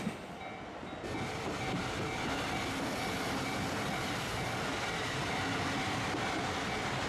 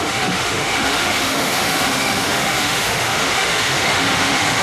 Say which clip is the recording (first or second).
first